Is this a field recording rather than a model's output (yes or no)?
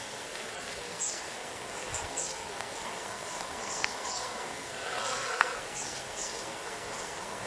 no